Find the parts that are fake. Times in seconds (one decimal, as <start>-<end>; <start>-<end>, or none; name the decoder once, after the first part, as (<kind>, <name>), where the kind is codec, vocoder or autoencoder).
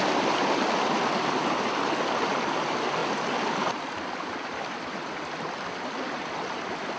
none